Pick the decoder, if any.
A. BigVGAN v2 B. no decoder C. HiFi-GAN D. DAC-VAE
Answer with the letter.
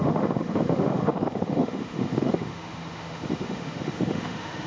D